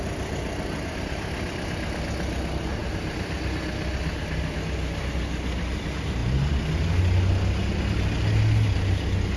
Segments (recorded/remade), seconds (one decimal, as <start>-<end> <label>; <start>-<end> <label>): 0.0-9.4 recorded